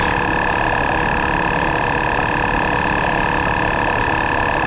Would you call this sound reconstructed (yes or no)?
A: no